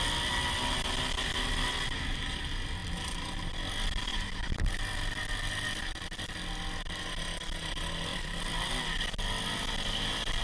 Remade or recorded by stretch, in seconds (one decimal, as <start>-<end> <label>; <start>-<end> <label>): 0.0-2.8 recorded; 2.8-3.5 remade; 3.5-8.1 recorded; 8.1-8.7 remade; 8.7-10.4 recorded